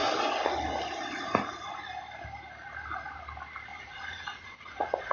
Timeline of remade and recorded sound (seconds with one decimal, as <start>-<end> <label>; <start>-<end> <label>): 0.0-3.7 recorded; 3.7-5.1 remade